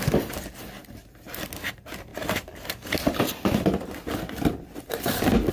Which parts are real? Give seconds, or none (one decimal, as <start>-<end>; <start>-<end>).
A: 0.0-0.8; 1.5-2.1